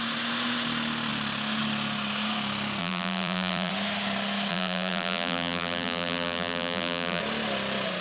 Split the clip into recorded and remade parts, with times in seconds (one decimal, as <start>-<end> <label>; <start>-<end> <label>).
0.0-2.8 recorded; 2.8-3.7 remade; 3.7-4.5 recorded; 4.5-7.2 remade; 7.2-8.0 recorded